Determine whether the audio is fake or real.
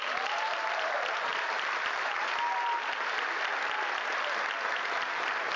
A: real